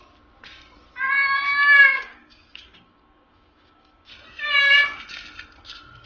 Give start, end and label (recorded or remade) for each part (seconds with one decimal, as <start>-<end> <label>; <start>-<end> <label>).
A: 0.0-1.9 recorded; 1.9-4.1 remade; 4.1-6.1 recorded